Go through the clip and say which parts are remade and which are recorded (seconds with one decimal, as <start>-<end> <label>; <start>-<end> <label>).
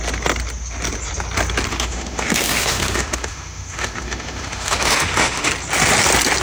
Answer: 0.0-1.7 recorded; 1.7-5.5 remade; 5.5-6.4 recorded